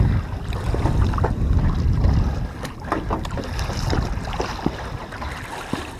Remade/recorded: recorded